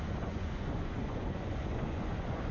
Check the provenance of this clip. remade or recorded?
remade